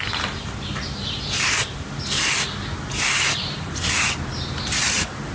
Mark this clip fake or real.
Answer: real